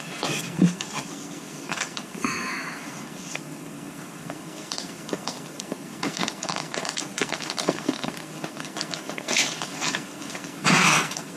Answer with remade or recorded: remade